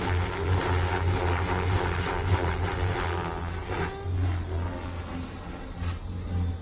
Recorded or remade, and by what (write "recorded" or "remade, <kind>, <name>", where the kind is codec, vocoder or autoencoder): recorded